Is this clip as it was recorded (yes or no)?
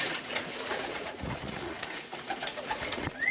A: no